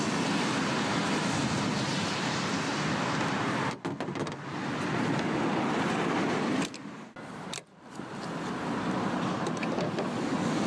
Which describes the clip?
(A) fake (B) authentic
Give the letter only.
B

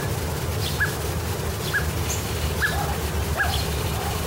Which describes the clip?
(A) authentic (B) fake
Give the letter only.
A